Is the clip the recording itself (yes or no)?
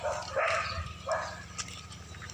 yes